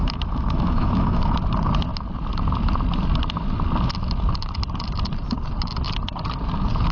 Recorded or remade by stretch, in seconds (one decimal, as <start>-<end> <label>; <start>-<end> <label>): 0.0-1.4 remade; 1.4-6.9 recorded